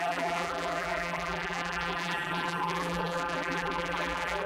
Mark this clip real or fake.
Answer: fake